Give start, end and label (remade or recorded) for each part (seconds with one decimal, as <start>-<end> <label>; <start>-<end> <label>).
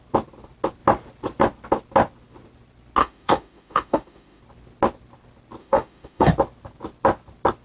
0.0-3.0 recorded; 3.0-4.4 remade; 4.4-5.6 recorded; 5.6-6.3 remade; 6.3-7.6 recorded